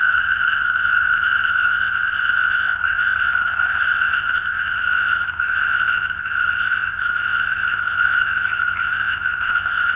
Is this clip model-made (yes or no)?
yes